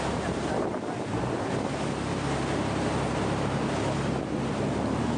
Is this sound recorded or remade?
recorded